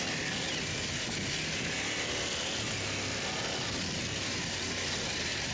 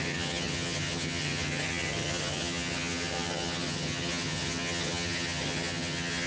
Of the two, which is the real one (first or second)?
first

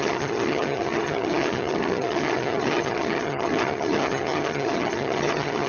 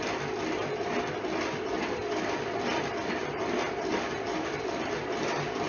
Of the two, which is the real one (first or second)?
second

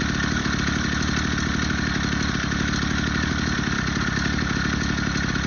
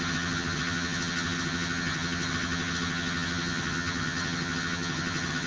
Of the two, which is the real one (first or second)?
first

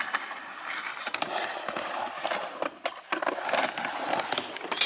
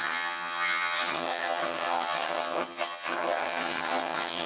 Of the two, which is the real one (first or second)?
first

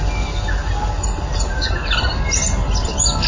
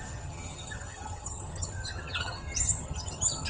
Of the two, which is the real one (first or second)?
first